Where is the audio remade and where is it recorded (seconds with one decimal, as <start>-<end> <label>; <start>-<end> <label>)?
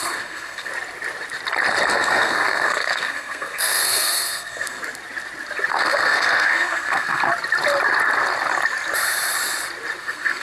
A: 0.0-0.7 remade; 0.7-1.9 recorded; 1.9-4.8 remade; 4.8-5.7 recorded; 5.7-7.3 remade; 7.3-10.0 recorded; 10.0-10.4 remade